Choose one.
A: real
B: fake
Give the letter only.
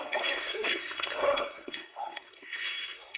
B